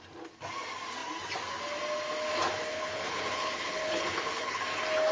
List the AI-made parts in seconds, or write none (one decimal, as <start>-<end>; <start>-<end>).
2.7-4.6